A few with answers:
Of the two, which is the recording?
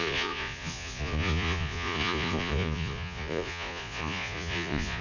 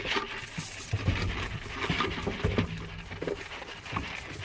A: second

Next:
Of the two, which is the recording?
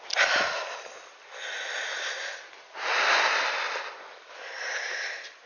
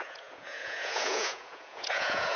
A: first